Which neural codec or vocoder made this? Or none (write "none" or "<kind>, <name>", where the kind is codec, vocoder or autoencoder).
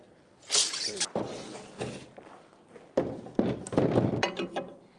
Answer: none